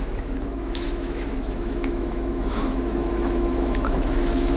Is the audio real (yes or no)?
no